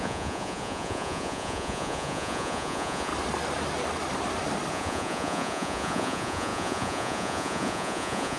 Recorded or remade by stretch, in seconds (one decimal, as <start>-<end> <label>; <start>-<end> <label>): 0.0-3.1 remade; 3.1-4.7 recorded; 4.7-8.4 remade